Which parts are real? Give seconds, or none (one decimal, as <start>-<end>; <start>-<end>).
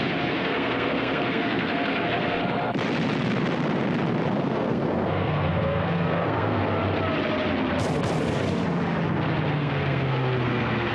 2.4-4.4; 6.6-9.5